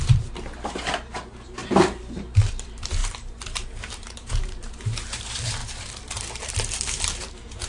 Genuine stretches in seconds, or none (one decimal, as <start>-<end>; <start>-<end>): none

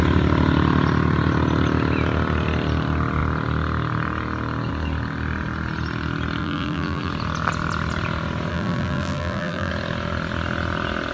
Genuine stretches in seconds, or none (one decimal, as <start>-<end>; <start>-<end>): 0.0-6.4; 7.1-8.5; 9.7-11.1

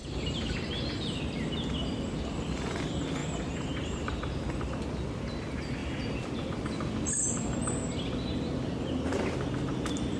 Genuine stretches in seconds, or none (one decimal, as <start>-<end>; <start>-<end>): 1.2-3.2; 4.7-10.2

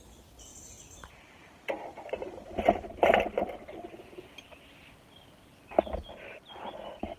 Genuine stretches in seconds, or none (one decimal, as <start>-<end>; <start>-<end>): 0.0-7.2

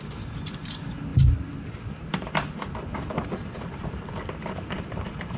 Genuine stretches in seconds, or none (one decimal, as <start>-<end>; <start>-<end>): none

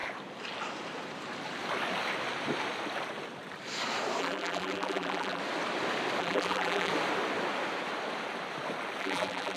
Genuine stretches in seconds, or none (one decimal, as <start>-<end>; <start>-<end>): 0.0-4.2; 5.4-6.2; 6.9-9.0